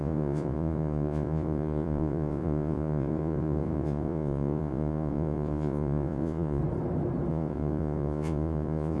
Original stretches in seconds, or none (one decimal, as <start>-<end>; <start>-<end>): 6.6-7.3